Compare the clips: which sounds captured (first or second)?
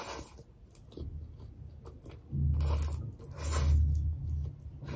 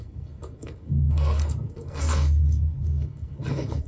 first